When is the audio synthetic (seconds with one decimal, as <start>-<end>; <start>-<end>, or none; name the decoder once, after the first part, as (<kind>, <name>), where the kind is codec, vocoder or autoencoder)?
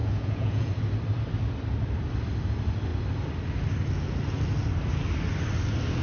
0.0-0.7 (vocoder, Vocos)